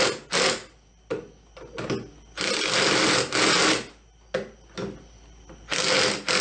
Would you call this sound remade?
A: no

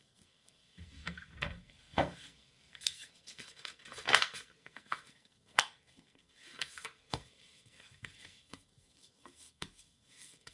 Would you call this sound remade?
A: yes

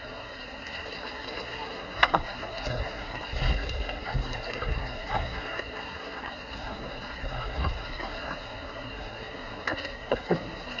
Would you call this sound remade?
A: yes